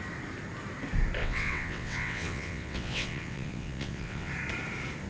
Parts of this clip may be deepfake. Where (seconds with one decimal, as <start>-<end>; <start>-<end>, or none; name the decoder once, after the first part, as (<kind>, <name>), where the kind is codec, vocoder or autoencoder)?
1.2-4.3 (vocoder, WaveNeXt)

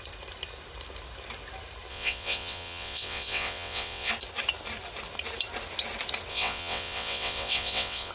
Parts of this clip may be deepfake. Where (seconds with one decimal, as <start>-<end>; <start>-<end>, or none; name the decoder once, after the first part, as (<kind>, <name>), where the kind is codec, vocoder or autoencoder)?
1.9-4.1 (vocoder, WaveNeXt); 6.3-8.1

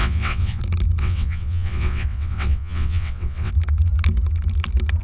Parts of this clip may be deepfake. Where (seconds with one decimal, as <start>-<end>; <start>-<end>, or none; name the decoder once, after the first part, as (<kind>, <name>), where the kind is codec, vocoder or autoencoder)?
0.0-0.6 (vocoder, WaveNeXt); 1.0-3.5

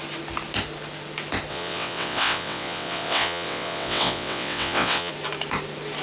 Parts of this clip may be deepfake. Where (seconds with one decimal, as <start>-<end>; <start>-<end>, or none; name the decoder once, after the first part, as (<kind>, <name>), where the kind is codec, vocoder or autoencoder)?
1.5-5.1 (vocoder, WaveNeXt)

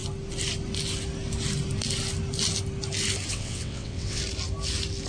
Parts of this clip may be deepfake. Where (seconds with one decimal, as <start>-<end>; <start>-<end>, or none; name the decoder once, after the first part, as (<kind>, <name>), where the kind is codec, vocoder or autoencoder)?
3.3-4.2 (vocoder, WaveNeXt)

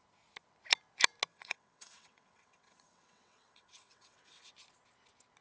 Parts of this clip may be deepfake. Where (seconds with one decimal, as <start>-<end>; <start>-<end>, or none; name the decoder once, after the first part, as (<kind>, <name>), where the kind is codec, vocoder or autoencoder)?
1.3-4.5 (vocoder, WaveNeXt)